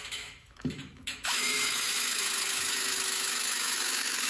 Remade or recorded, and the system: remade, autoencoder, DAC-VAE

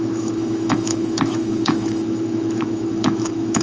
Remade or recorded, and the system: remade, autoencoder, DAC-VAE